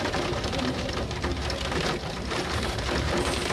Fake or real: fake